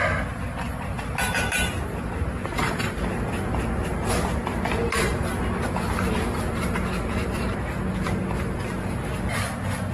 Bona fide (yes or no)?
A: yes